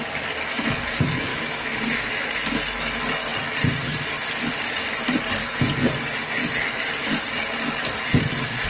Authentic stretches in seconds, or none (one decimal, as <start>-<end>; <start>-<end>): 0.0-1.3; 2.1-8.7